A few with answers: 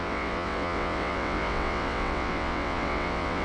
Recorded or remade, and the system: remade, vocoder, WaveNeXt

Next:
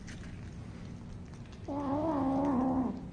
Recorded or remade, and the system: recorded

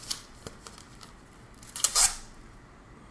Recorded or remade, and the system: recorded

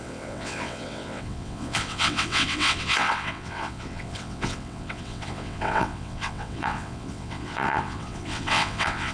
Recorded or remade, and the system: remade, vocoder, WaveNeXt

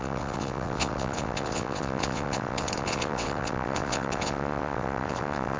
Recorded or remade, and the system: remade, vocoder, WaveNeXt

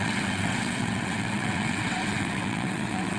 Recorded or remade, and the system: remade, vocoder, WaveNeXt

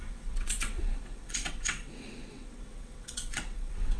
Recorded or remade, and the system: remade, vocoder, WaveNeXt